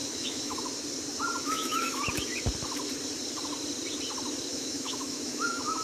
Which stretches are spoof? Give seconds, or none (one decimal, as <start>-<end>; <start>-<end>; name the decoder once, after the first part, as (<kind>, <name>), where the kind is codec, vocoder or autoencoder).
0.0-0.7 (autoencoder, DAC-VAE); 1.4-2.1; 4.5-5.8